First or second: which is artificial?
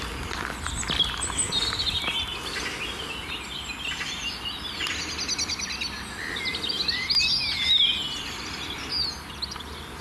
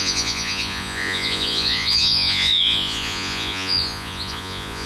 second